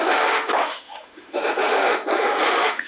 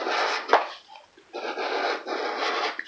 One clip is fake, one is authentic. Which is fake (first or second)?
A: first